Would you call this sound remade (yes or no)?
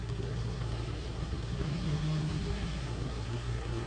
yes